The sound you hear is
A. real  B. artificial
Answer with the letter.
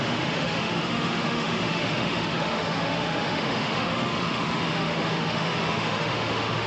B